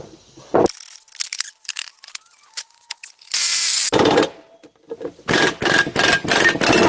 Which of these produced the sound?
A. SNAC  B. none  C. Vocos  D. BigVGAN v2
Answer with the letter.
B